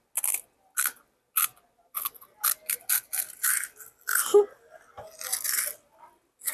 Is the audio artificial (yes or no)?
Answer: no